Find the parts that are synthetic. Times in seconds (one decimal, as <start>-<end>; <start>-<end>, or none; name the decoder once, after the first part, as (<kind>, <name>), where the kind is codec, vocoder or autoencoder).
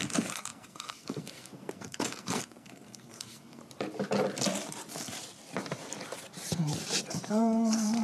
0.0-3.6 (codec, SNAC); 7.3-8.0